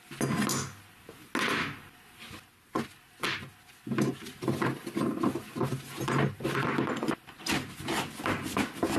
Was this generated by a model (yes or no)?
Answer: no